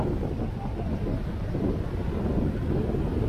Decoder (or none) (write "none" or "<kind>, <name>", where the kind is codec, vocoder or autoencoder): none